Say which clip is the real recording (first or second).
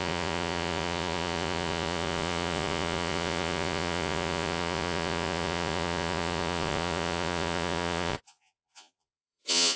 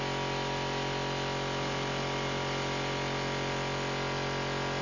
second